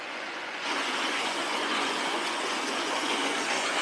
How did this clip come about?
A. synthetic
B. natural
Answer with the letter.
A